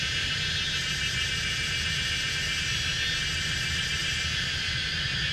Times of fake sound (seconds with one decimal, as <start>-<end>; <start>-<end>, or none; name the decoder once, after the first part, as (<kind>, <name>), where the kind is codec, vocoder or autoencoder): none